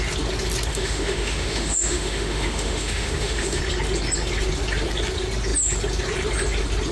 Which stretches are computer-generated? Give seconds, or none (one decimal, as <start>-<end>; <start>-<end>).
0.7-3.6